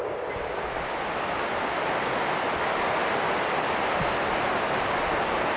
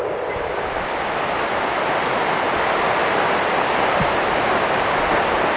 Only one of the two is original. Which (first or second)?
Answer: first